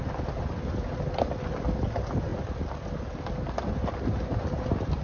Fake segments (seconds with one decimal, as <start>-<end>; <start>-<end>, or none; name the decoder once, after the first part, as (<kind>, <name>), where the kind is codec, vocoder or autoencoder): none